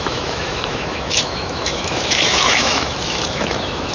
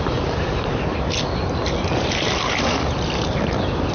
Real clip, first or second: second